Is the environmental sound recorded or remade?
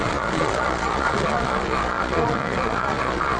remade